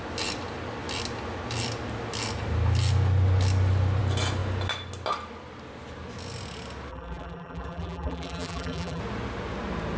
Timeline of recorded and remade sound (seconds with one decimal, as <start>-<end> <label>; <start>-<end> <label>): 0.0-6.9 recorded; 6.9-9.0 remade; 9.0-10.0 recorded